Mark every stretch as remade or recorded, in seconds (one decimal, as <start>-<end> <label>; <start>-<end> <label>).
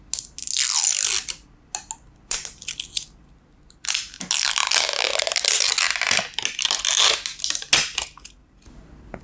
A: 0.0-9.2 recorded